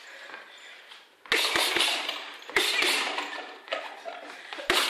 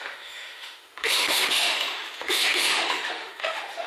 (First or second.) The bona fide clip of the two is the first